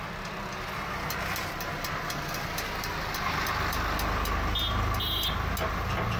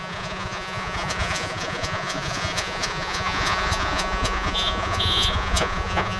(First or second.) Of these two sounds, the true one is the first